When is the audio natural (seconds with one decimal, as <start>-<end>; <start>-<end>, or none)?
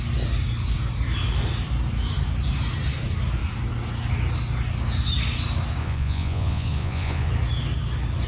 0.0-5.8; 7.3-8.3